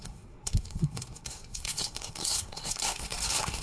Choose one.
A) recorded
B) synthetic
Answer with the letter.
B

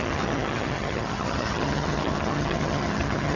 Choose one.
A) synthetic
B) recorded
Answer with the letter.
A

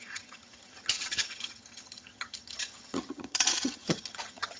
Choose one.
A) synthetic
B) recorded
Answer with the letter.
A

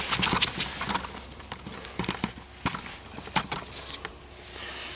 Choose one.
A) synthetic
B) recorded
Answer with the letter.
B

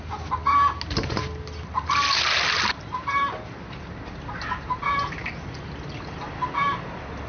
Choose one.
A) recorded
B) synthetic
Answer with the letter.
A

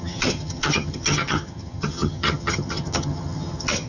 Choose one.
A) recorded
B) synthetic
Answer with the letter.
B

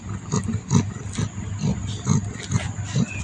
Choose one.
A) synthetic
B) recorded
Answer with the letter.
B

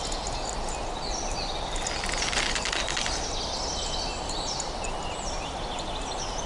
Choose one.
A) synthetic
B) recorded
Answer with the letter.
B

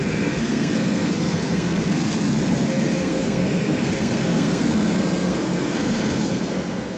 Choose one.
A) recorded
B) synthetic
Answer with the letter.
B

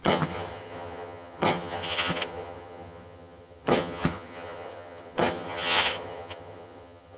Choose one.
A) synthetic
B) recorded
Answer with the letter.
A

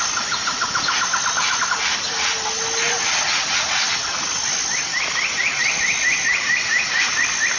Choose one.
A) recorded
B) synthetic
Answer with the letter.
A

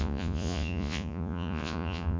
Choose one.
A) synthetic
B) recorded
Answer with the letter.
A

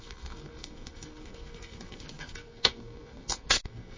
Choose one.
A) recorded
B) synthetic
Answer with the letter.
B